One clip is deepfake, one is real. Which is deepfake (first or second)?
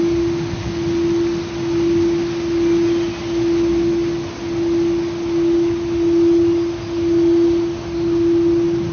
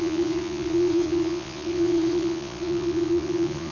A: second